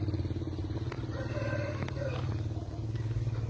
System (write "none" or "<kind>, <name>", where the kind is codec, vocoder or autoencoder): none